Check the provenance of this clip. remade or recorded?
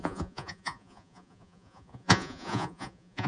remade